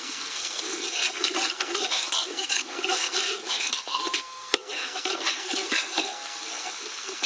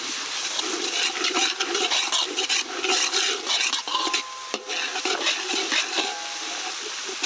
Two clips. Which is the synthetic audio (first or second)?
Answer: first